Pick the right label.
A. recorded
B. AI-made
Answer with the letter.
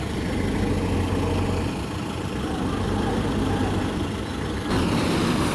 B